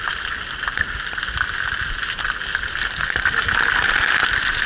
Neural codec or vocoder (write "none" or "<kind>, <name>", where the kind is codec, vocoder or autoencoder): none